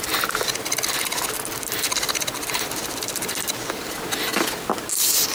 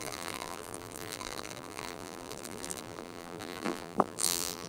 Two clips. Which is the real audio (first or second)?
first